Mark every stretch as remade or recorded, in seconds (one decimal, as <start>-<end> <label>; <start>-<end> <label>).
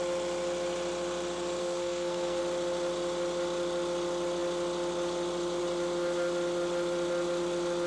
0.0-1.6 recorded; 1.6-2.4 remade; 2.4-7.9 recorded